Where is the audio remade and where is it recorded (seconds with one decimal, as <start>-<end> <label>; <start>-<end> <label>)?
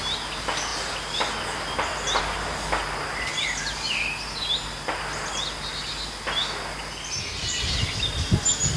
0.0-8.8 recorded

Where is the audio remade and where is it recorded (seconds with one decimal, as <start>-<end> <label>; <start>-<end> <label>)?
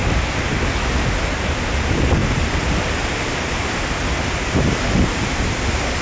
0.0-6.0 recorded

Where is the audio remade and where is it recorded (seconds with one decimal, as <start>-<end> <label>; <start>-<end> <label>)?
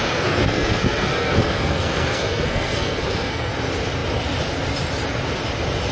0.0-3.5 remade; 3.5-5.9 recorded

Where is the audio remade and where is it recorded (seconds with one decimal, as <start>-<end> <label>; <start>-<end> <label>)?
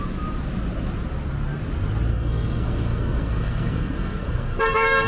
0.0-2.1 recorded; 2.1-5.1 remade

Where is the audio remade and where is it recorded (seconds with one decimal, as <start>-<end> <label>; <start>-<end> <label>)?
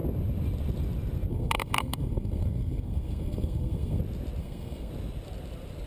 0.0-1.3 recorded; 1.3-4.0 remade; 4.0-4.4 recorded; 4.4-4.9 remade; 4.9-5.9 recorded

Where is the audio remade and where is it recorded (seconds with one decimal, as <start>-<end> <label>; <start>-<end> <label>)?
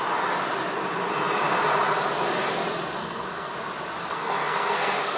0.0-3.0 recorded; 3.0-3.5 remade; 3.5-4.0 recorded; 4.0-5.2 remade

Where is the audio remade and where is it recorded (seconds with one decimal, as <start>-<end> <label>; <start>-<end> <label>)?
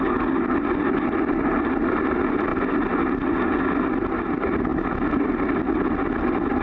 0.0-6.6 recorded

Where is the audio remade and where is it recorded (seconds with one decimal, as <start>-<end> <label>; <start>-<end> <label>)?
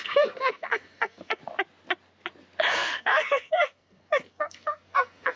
0.0-1.4 remade; 1.4-2.7 recorded; 2.7-5.4 remade